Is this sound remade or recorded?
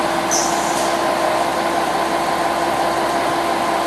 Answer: recorded